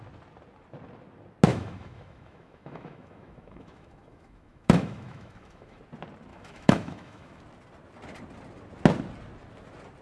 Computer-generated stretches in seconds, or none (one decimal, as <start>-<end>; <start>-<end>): 1.5-5.8; 6.3-7.4